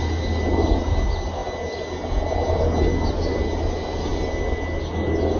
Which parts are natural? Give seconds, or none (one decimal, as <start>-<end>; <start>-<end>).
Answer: 0.0-5.4